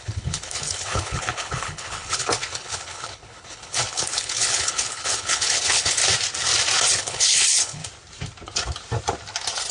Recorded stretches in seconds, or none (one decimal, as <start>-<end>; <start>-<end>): 6.0-6.9; 7.8-9.7